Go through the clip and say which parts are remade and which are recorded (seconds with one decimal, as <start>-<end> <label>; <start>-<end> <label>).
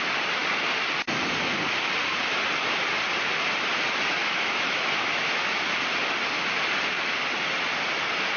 0.0-4.2 recorded; 4.2-5.6 remade; 5.6-8.4 recorded